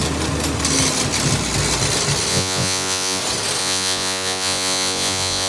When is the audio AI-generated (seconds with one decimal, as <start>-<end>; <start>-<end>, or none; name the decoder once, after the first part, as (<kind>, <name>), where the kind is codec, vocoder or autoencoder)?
2.3-3.2 (vocoder, Vocos); 3.6-5.5